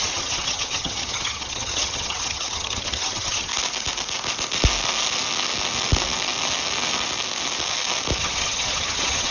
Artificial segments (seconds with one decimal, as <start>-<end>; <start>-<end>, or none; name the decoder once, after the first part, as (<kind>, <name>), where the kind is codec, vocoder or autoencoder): 0.0-3.5 (vocoder, HiFi-GAN); 8.2-9.3